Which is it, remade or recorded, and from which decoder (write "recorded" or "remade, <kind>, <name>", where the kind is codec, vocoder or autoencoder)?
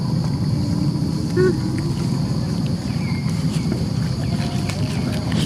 recorded